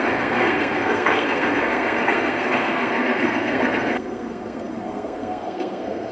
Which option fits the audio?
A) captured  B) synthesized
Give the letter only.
B